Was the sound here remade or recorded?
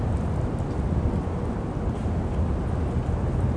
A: recorded